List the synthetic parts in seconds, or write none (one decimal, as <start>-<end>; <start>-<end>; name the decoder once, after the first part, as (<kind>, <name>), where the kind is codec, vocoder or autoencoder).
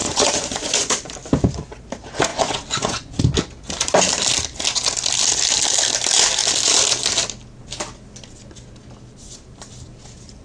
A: 0.0-0.9 (vocoder, Vocos); 2.3-3.2